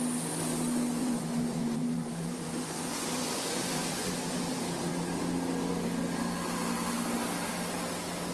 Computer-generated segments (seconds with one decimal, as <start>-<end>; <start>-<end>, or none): 1.0-4.4